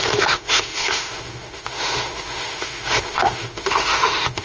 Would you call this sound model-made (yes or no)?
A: yes